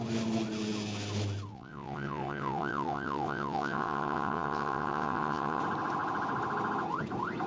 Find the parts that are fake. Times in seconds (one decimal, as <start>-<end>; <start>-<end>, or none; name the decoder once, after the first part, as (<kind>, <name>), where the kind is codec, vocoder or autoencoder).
1.5-5.6 (vocoder, WaveNeXt)